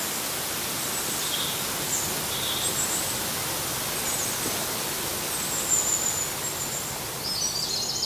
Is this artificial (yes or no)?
no